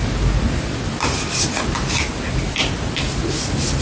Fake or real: real